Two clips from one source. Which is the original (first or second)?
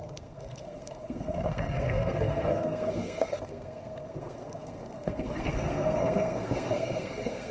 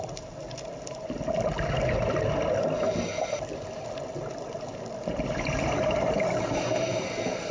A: second